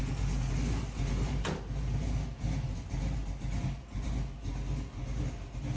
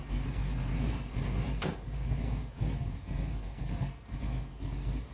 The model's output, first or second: second